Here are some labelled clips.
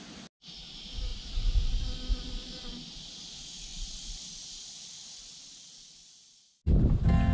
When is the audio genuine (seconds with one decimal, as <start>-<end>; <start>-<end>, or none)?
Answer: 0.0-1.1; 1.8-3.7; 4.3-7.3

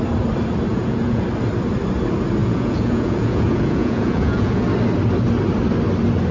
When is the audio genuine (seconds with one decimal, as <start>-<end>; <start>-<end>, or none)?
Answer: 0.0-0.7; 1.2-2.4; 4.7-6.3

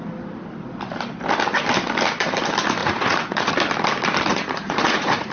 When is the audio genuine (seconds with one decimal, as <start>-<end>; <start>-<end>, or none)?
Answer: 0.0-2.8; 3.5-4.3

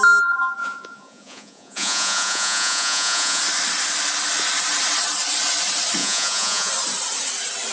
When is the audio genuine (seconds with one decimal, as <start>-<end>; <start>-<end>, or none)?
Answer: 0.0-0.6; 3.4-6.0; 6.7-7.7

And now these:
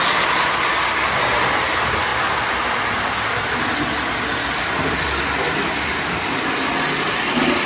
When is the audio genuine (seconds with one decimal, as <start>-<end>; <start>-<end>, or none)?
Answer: 0.0-7.7

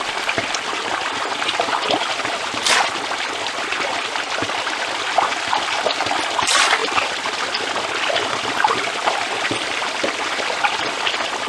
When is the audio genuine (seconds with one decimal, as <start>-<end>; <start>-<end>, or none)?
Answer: 0.0-11.5

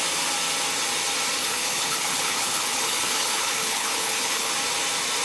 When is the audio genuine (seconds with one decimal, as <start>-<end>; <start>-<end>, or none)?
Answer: 0.0-1.4; 4.5-5.2

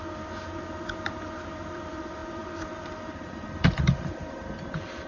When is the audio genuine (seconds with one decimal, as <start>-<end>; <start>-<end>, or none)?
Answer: none